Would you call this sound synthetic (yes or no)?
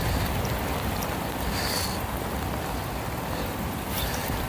no